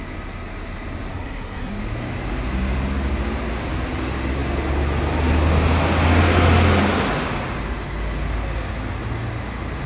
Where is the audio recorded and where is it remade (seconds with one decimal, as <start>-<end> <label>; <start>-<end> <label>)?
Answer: 0.0-1.1 recorded; 1.1-1.7 remade; 1.7-9.9 recorded